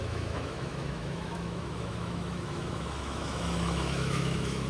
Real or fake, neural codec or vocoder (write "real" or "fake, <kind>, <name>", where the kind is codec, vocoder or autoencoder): fake, autoencoder, DAC-VAE